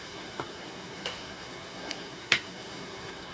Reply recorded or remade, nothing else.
remade